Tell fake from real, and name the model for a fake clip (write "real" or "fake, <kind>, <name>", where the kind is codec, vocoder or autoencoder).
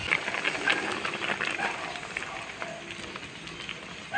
real